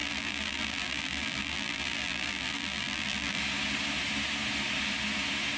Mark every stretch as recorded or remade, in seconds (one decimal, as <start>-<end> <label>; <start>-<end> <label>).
0.0-3.4 remade; 3.4-5.6 recorded